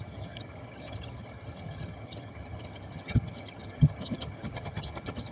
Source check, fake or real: fake